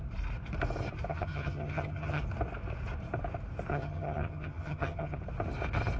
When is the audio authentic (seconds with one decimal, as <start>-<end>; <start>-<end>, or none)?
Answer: 0.0-1.1; 2.2-3.7; 5.2-6.0